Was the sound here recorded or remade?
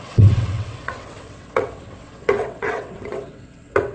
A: remade